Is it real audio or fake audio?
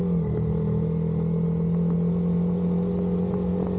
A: real